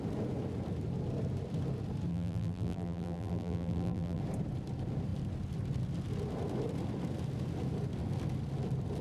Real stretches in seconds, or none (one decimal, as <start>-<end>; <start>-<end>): 0.0-2.1; 4.2-9.0